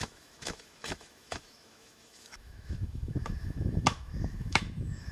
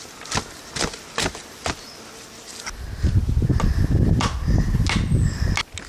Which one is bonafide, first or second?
second